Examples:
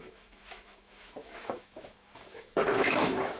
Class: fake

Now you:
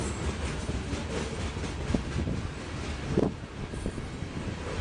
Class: real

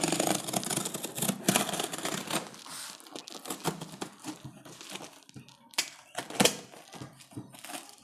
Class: real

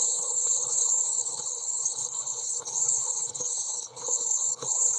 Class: fake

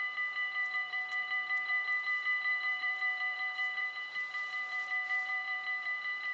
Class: fake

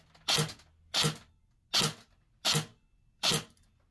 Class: real